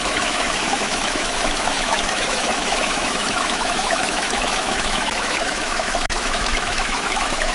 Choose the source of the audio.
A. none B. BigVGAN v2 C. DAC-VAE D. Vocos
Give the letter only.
C